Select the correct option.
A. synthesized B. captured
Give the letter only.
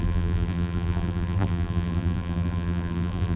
A